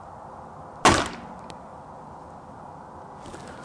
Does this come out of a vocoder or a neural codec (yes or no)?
no